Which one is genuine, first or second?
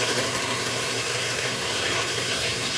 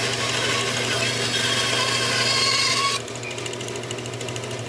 second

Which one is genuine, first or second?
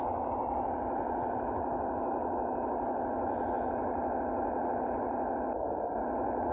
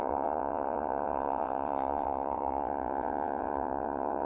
first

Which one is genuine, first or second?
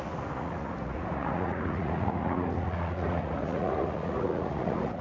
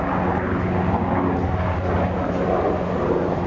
second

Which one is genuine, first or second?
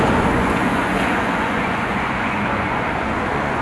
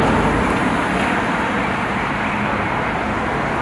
second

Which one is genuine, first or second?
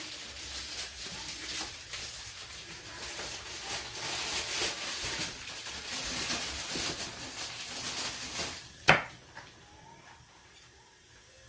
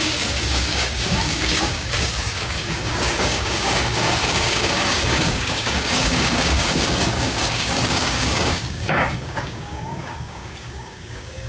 first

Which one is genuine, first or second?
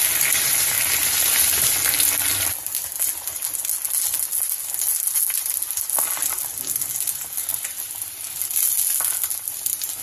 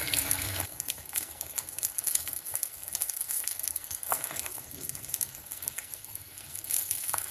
first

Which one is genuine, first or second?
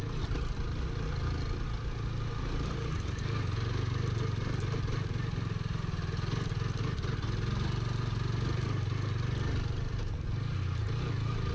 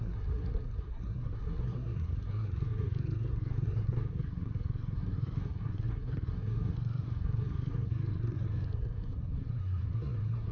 first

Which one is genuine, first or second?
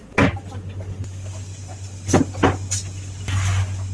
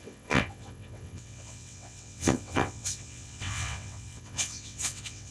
first